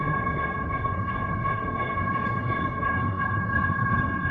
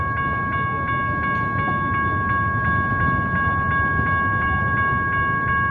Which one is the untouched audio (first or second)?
second